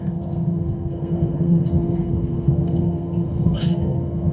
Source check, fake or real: fake